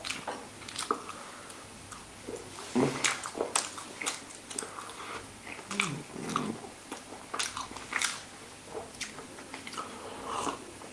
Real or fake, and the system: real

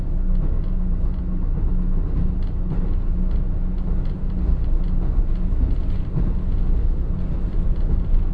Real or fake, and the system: real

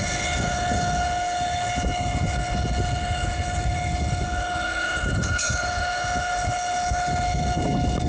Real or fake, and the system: fake, codec, HILCodec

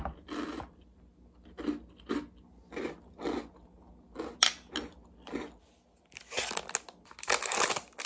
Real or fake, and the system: real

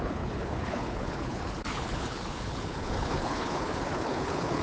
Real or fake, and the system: fake, codec, HILCodec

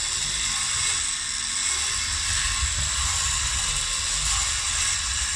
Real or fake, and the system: real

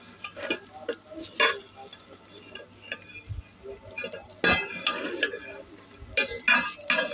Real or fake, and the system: real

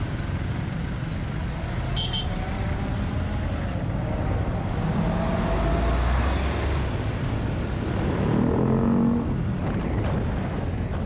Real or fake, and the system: real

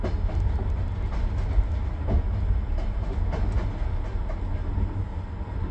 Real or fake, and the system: real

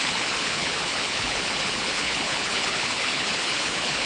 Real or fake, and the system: fake, codec, HILCodec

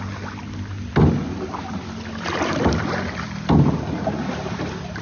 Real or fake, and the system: real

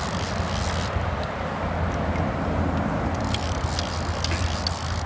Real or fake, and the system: real